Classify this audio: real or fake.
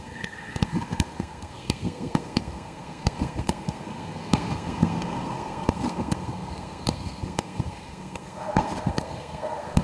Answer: fake